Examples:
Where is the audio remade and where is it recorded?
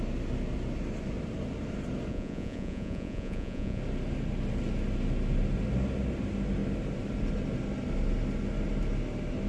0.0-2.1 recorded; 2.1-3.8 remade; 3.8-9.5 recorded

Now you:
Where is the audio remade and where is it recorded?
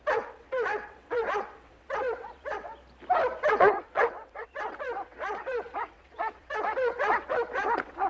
0.0-2.7 remade; 2.7-3.4 recorded; 3.4-8.1 remade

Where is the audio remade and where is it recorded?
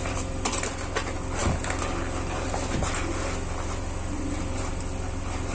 0.0-5.5 recorded